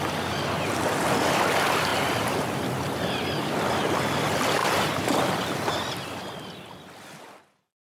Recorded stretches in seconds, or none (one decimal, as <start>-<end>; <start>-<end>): 0.0-1.9; 3.6-4.6; 5.7-7.8